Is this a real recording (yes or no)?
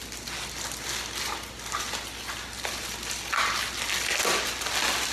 yes